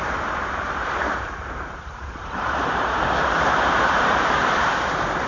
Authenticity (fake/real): fake